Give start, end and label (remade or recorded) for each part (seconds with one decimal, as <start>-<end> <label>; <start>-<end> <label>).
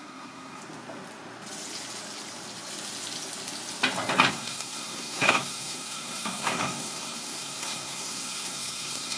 0.0-0.6 remade; 0.6-4.3 recorded; 4.3-9.2 remade